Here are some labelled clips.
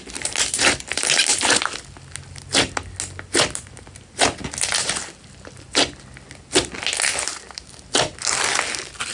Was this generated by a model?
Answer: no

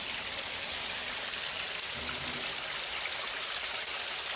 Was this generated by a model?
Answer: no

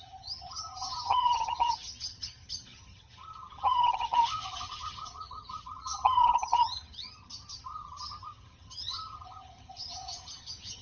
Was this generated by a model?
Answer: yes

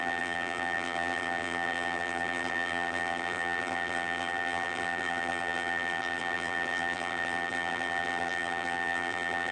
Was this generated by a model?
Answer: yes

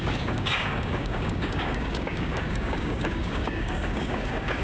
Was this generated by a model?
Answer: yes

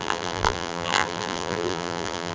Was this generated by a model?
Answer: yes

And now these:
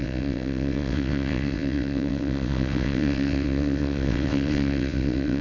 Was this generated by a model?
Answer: yes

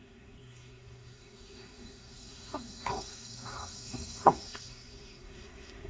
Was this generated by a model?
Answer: yes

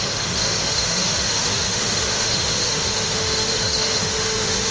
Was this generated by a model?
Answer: yes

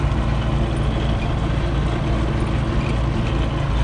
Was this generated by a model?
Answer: no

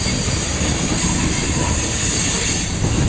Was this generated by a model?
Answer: no